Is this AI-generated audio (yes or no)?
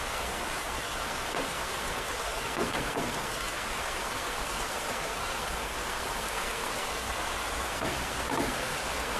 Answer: yes